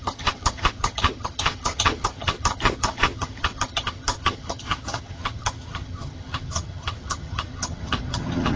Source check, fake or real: fake